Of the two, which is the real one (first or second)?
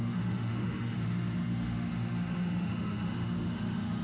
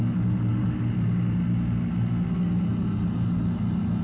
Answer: second